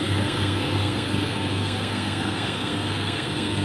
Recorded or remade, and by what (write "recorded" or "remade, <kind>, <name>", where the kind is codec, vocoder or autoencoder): remade, codec, SNAC